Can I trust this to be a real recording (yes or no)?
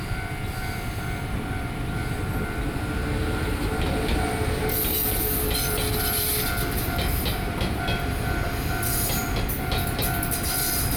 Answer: yes